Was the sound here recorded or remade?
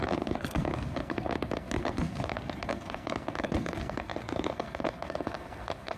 remade